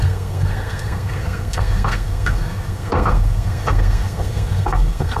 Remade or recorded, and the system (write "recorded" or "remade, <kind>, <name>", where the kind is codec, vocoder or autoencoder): remade, codec, SNAC